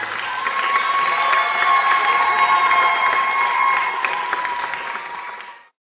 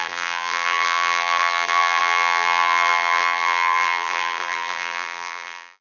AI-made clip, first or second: second